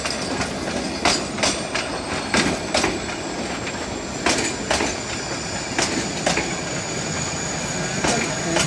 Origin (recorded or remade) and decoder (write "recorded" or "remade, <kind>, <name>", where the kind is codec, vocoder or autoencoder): recorded